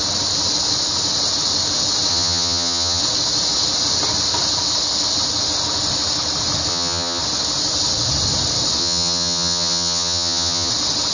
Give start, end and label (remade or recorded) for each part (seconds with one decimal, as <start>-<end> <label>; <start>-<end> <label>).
0.0-2.1 recorded; 2.1-3.0 remade; 3.0-6.7 recorded; 6.7-7.2 remade; 7.2-8.8 recorded; 8.8-10.7 remade; 10.7-11.1 recorded